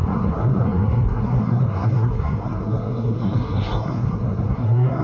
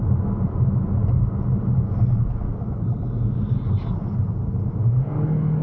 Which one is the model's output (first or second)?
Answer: first